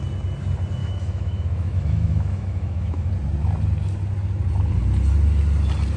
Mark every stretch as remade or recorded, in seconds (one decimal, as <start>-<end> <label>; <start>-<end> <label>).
0.0-0.8 recorded; 0.8-3.1 remade; 3.1-6.0 recorded

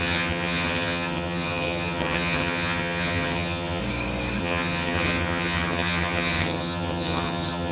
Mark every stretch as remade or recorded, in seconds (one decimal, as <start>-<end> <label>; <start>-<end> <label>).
0.0-3.8 remade; 3.8-4.4 recorded; 4.4-7.7 remade

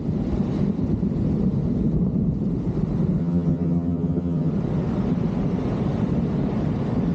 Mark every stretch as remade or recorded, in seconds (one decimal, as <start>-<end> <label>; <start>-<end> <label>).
0.0-3.2 recorded; 3.2-4.5 remade; 4.5-7.1 recorded

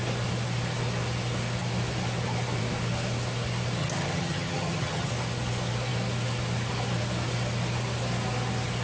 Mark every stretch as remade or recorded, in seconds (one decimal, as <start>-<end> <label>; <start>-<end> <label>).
0.0-3.8 recorded; 3.8-5.1 remade; 5.1-8.8 recorded